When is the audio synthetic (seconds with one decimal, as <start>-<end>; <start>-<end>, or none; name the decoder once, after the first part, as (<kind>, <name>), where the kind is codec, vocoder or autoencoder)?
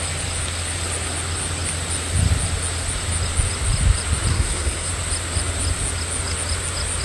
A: 4.3-4.9 (codec, SNAC)